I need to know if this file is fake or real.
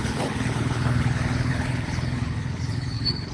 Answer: fake